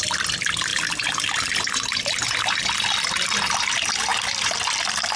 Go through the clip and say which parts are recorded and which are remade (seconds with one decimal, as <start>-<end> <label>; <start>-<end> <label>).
0.0-0.7 recorded; 0.7-1.5 remade; 1.5-5.2 recorded